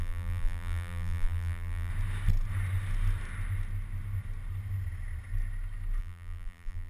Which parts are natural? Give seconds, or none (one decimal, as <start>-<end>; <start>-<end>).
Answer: 1.9-6.0